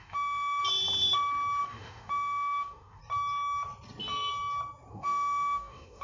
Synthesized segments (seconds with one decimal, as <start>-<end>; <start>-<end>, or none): 0.0-0.6; 1.6-3.0; 4.9-6.0